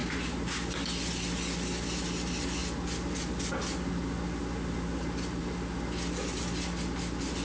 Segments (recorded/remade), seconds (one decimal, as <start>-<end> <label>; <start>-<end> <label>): 0.0-1.1 remade; 1.1-7.4 recorded